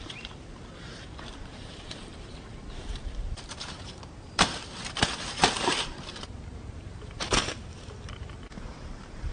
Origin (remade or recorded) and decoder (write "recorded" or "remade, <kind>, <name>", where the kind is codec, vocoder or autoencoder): remade, vocoder, BigVGAN v2